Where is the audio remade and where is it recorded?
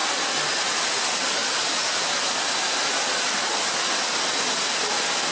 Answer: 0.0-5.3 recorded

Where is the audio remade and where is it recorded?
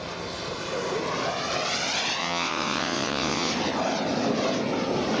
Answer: 0.0-2.2 recorded; 2.2-3.5 remade; 3.5-5.2 recorded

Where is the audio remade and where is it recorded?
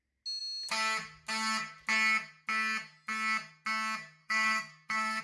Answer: 0.0-4.2 recorded; 4.2-5.2 remade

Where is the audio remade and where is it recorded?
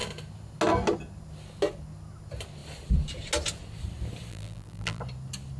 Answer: 0.0-4.3 recorded; 4.3-5.0 remade; 5.0-5.6 recorded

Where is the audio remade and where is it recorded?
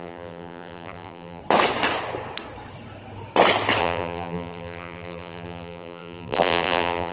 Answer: 0.0-1.4 remade; 1.4-3.8 recorded; 3.8-7.1 remade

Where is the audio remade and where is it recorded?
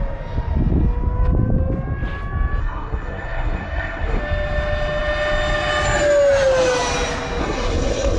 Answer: 0.0-2.6 recorded; 2.6-4.2 remade; 4.2-7.4 recorded; 7.4-8.2 remade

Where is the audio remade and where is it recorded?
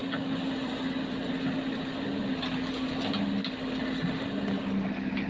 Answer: 0.0-5.3 recorded